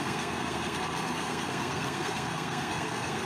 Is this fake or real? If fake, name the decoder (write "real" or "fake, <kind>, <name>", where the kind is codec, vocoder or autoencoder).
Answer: fake, codec, SNAC